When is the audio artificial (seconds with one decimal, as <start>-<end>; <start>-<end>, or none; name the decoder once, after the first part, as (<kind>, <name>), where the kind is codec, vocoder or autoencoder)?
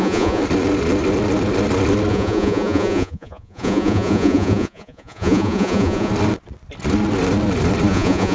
0.0-0.4 (vocoder, Vocos); 2.1-6.1; 7.9-8.3